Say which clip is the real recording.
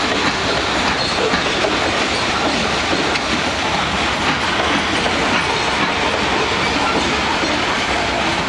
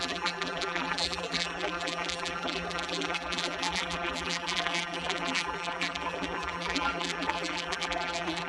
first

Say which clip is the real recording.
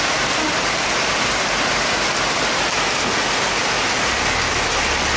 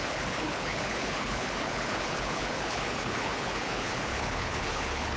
first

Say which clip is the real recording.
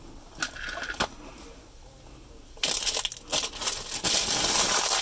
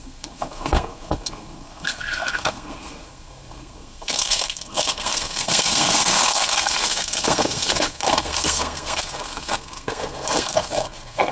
first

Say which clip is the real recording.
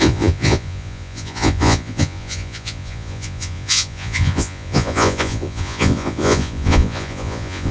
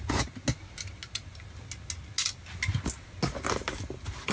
second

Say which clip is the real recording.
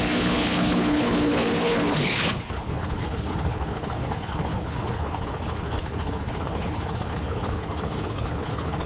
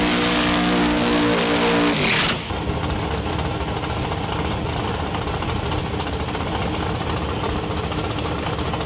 second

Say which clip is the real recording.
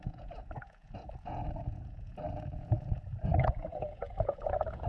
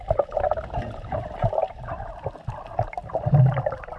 second